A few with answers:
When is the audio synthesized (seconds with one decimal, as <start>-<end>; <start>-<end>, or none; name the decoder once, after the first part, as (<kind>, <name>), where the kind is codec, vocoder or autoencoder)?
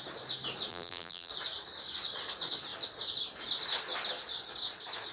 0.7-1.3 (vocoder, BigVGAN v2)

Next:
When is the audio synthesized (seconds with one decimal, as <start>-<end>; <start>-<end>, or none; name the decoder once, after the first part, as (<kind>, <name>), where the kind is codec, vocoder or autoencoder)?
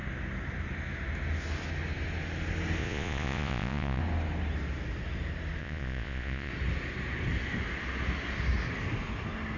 2.8-4.0 (vocoder, Vocos); 5.6-6.5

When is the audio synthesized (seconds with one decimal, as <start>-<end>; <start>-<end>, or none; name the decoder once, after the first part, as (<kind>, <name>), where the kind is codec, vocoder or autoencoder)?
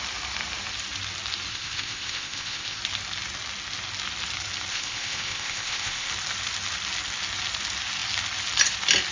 1.5-2.8 (codec, ZipCodec); 4.7-6.1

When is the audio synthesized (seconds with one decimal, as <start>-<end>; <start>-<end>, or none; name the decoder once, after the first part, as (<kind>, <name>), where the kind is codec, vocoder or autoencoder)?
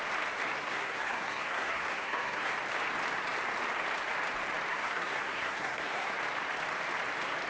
0.6-2.5 (codec, SNAC); 4.7-6.2